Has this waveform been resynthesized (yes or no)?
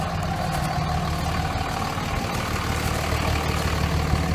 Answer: no